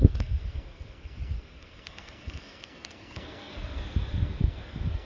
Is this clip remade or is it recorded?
remade